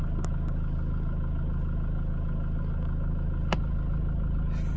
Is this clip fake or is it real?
real